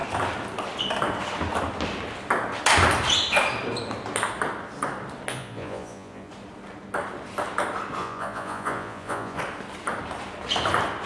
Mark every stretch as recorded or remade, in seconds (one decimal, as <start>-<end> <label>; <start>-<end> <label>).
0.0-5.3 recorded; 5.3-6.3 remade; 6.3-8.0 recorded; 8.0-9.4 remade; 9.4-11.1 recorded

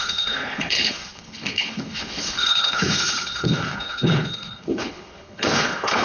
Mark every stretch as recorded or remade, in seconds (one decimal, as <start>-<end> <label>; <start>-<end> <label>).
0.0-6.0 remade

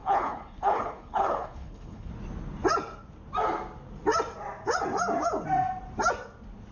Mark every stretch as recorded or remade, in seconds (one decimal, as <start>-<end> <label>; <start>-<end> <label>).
0.0-2.1 remade; 2.1-6.7 recorded